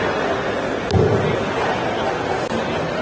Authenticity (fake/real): real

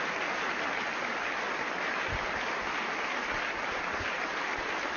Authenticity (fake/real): real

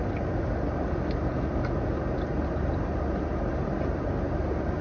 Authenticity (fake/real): real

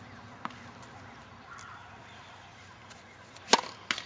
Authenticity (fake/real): real